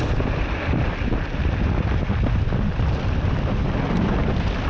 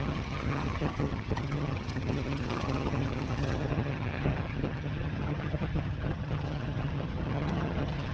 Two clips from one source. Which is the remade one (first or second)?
second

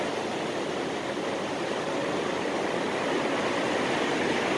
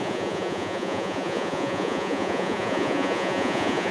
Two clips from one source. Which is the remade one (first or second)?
second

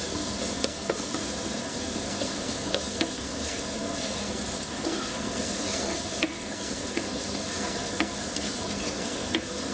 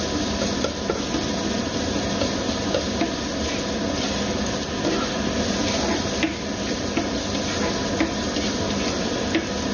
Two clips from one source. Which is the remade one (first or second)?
first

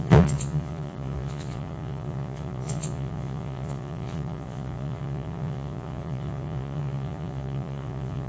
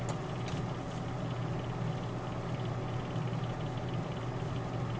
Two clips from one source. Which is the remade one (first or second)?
first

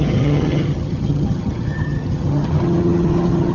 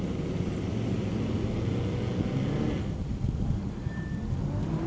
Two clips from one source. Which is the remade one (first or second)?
first